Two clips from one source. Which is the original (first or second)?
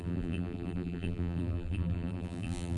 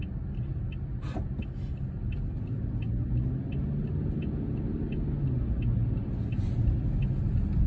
second